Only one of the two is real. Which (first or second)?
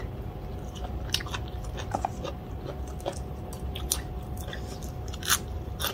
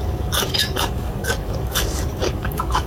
first